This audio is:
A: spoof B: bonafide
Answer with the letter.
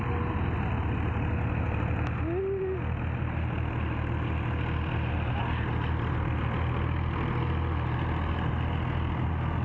B